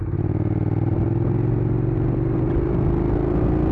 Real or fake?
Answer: real